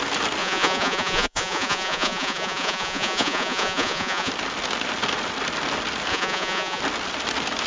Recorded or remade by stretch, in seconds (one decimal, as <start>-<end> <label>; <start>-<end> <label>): 0.0-0.4 recorded; 0.4-4.3 remade; 4.3-6.1 recorded; 6.1-6.8 remade; 6.8-7.7 recorded